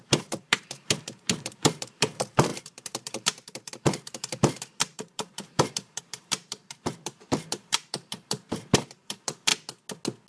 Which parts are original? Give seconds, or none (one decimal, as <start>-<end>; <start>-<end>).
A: 9.5-10.3